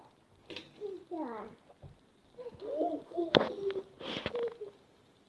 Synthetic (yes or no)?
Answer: no